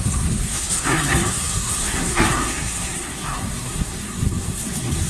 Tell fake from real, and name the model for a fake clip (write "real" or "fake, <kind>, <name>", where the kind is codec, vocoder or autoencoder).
fake, codec, SNAC